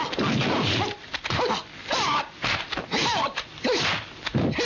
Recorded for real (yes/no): no